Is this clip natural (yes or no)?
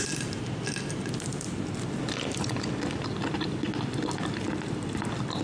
yes